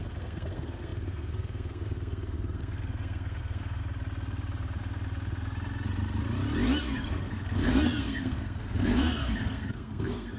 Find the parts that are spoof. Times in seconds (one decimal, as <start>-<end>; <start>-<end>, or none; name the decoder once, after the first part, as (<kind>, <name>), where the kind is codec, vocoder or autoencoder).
0.0-3.8 (codec, SNAC); 6.8-10.4